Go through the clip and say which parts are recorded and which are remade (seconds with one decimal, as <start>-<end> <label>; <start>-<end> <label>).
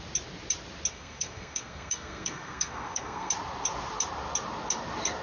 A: 0.0-0.9 recorded; 0.9-3.3 remade; 3.3-5.2 recorded